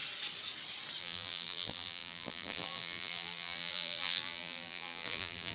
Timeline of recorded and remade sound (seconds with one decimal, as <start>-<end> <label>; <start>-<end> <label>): 0.0-1.0 recorded; 1.0-5.5 remade